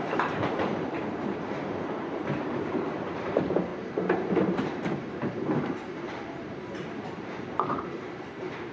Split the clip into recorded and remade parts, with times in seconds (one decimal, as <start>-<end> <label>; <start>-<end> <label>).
0.0-8.7 remade